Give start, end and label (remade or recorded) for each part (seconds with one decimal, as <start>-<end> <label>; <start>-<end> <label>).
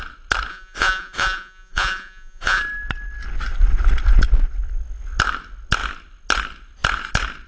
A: 0.0-0.5 recorded; 0.5-2.6 remade; 2.6-7.5 recorded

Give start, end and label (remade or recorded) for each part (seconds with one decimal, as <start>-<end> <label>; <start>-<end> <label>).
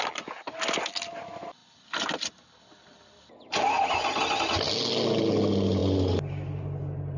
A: 0.0-1.6 recorded; 1.6-4.2 remade; 4.2-7.2 recorded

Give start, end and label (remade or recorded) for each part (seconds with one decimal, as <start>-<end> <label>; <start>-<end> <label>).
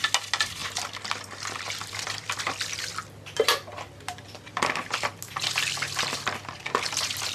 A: 0.0-7.3 recorded